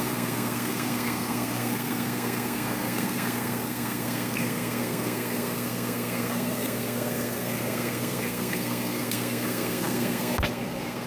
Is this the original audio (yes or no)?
no